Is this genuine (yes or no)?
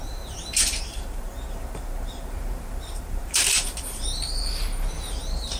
no